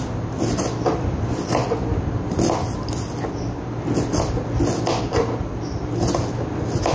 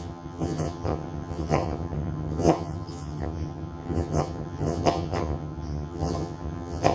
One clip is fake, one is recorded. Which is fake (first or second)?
second